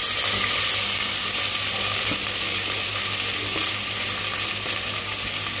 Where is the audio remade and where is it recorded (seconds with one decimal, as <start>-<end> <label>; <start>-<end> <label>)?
0.0-5.6 recorded